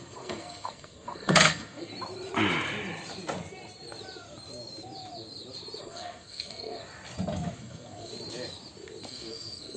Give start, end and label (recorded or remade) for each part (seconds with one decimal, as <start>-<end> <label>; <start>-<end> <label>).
0.0-1.9 remade; 1.9-5.8 recorded; 5.8-6.8 remade; 6.8-7.6 recorded; 7.6-8.1 remade; 8.1-9.1 recorded; 9.1-9.8 remade